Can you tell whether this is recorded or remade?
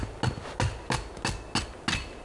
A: recorded